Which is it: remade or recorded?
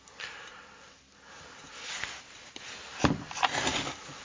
recorded